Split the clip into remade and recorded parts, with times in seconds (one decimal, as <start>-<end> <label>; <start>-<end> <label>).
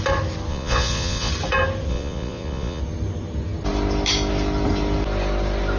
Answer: 0.0-0.5 recorded; 0.5-1.3 remade; 1.3-1.9 recorded; 1.9-2.8 remade; 2.8-5.8 recorded